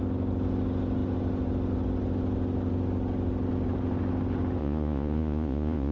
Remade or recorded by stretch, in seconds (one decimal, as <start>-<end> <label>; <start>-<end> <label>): 0.0-4.6 recorded; 4.6-5.9 remade